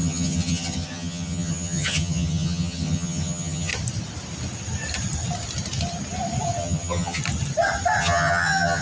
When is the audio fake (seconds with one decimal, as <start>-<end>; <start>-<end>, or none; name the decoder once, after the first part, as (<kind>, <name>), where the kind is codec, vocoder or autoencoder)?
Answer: 0.0-3.7 (vocoder, HiFi-GAN); 6.6-7.2; 8.0-8.8